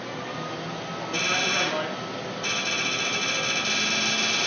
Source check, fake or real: real